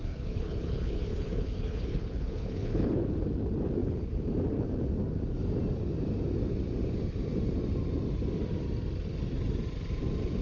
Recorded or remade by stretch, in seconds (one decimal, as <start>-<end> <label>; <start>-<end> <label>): 0.0-3.0 remade; 3.0-10.4 recorded